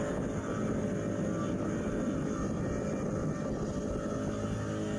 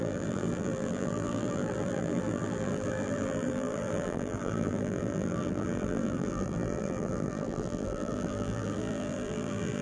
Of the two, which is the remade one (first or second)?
second